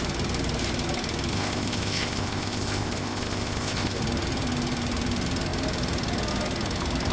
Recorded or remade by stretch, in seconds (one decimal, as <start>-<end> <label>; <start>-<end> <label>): 0.0-1.3 recorded; 1.3-4.0 remade; 4.0-7.1 recorded